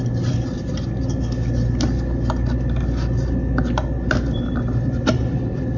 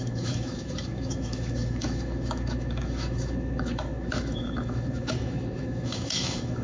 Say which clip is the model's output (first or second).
second